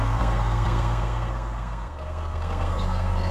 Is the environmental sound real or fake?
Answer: fake